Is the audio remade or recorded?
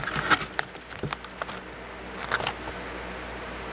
recorded